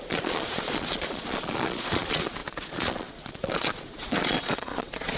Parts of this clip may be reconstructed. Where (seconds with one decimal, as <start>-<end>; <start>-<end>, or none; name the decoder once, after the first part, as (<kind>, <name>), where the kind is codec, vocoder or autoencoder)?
0.0-5.2 (vocoder, Vocos)